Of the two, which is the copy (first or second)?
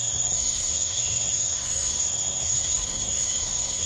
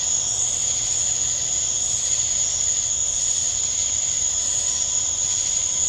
first